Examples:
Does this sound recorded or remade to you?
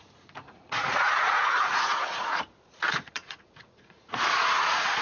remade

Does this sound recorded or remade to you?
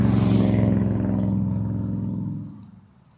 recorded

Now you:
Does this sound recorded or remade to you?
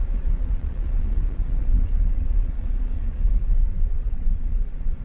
remade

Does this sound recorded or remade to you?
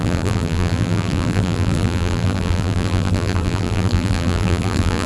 remade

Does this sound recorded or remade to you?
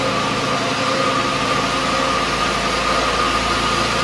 recorded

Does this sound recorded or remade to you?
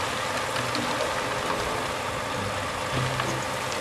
recorded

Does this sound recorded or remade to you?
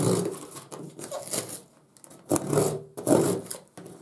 recorded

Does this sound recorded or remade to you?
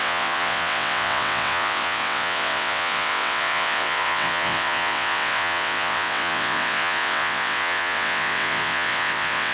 remade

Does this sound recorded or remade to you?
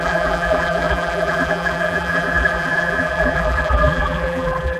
remade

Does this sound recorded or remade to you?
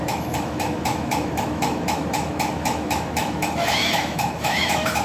remade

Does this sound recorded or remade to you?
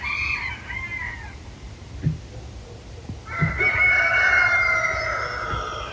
recorded